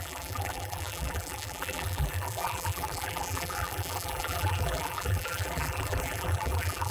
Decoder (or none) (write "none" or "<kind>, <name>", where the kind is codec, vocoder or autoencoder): vocoder, BigVGAN v2